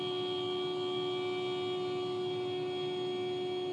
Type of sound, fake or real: real